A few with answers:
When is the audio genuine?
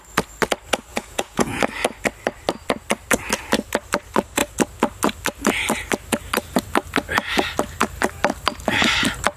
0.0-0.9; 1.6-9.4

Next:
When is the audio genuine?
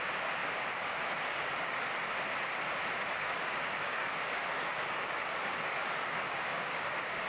0.0-1.3; 1.9-3.2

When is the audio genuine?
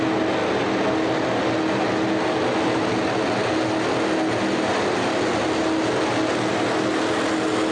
0.0-7.7